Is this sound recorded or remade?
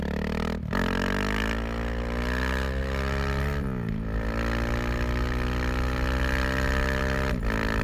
recorded